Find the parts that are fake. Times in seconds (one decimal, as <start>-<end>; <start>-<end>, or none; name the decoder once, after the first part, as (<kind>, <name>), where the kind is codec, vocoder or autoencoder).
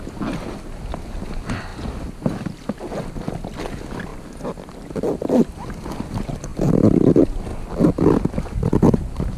none